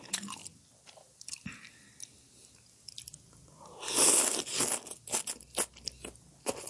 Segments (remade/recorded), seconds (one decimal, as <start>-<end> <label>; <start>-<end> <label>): 0.0-6.7 recorded